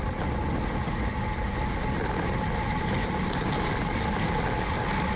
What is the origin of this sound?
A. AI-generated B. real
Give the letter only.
B